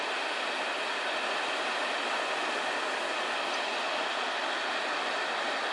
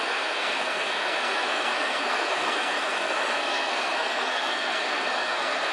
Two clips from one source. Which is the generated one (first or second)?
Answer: second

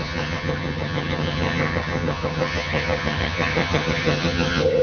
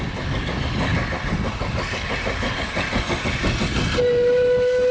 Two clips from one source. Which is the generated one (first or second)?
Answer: first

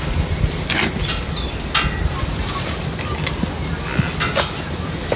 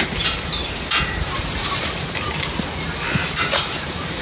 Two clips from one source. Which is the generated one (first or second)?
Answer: second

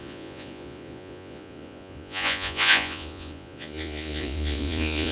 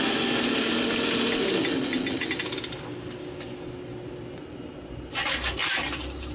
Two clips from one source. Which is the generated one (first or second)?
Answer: first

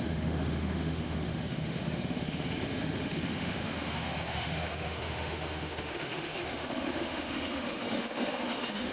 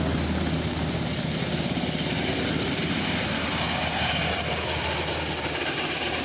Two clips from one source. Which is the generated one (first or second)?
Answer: first